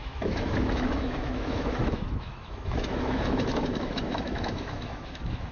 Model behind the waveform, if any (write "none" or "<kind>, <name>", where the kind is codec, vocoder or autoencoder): autoencoder, DAC-VAE